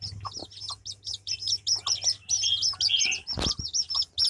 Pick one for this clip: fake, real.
real